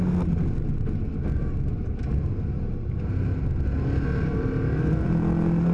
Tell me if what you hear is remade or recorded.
recorded